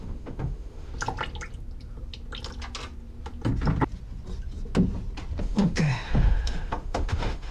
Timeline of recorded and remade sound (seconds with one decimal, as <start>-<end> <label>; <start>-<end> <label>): 0.0-0.9 remade; 0.9-5.4 recorded; 5.4-7.5 remade